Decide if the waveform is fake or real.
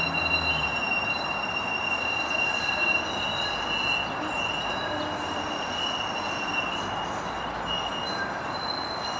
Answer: real